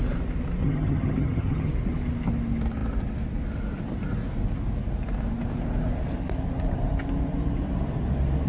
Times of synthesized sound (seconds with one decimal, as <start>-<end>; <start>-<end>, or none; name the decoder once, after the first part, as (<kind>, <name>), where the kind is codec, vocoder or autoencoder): 0.6-1.7 (vocoder, HiFi-GAN)